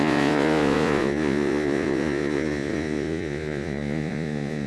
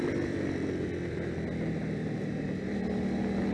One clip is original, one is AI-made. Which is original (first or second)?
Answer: second